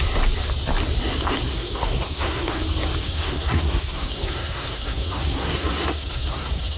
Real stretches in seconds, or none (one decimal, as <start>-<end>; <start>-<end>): 0.0-1.5; 2.6-3.0